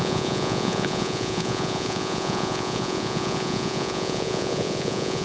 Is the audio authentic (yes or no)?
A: no